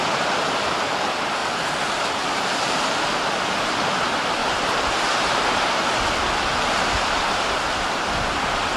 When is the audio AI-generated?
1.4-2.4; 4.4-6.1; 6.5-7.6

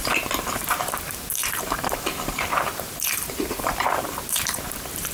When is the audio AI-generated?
0.0-5.1

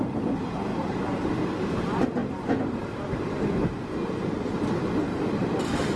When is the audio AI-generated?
0.7-1.4; 5.1-5.6

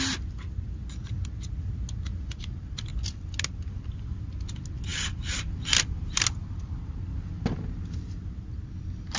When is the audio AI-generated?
none

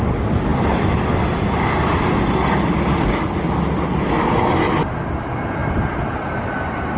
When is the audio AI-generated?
none

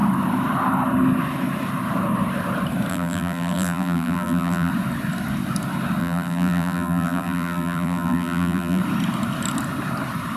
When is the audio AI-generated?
2.9-4.7; 6.0-8.8

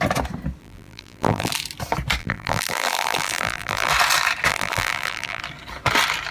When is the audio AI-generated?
0.6-1.5; 2.2-3.9; 4.5-5.4